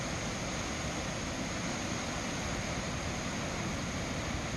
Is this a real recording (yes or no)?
yes